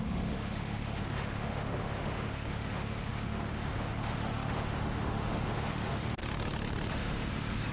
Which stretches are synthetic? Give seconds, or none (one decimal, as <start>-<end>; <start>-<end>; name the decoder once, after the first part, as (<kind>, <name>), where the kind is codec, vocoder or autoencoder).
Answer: 0.0-6.2 (autoencoder, DAC-VAE); 6.9-7.7